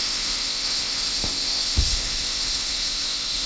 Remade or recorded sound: remade